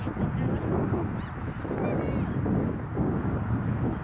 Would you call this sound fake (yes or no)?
no